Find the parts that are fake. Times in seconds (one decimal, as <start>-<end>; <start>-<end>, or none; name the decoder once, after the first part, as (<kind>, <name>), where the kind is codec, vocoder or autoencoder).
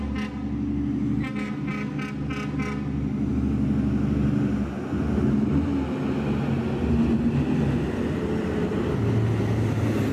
none